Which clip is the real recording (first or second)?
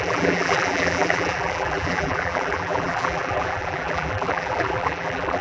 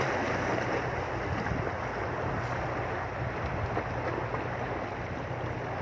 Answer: second